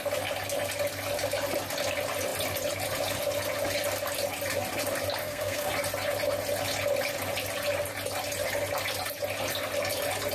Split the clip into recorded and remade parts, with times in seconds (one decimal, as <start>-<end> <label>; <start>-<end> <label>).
0.0-5.2 recorded; 5.2-5.7 remade; 5.7-10.3 recorded

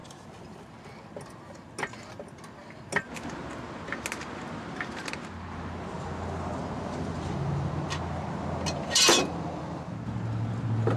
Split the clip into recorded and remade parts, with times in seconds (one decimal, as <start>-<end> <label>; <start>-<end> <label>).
0.0-11.0 recorded

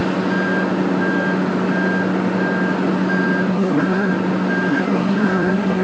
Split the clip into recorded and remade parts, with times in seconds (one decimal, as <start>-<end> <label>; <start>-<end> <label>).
0.0-3.5 recorded; 3.5-4.1 remade; 4.1-4.7 recorded; 4.7-5.8 remade